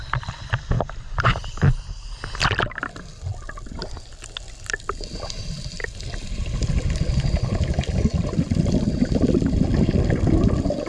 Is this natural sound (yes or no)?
yes